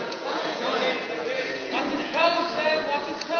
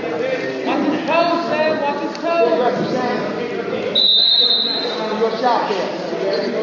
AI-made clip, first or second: first